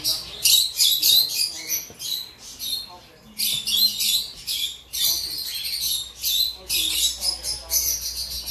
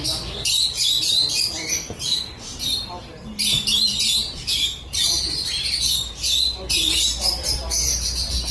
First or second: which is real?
first